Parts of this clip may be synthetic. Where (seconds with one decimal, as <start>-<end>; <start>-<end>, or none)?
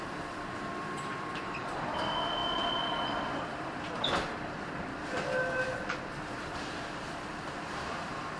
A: 0.0-8.4